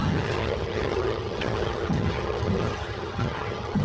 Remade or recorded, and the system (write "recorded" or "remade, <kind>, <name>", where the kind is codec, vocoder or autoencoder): remade, vocoder, HiFi-GAN